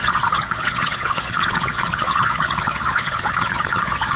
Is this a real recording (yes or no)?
no